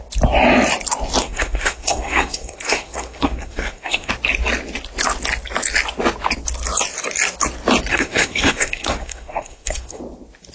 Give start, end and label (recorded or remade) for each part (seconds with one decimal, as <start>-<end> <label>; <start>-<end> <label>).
0.0-1.2 recorded; 1.2-4.1 remade; 4.1-7.9 recorded; 7.9-10.0 remade; 10.0-10.5 recorded